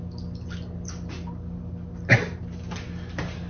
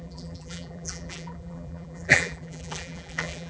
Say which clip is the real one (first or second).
first